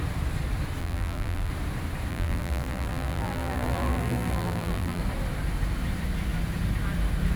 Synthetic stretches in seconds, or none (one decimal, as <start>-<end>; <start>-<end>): 0.8-1.5; 2.1-5.0